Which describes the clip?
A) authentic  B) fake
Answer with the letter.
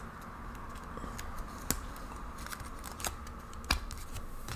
A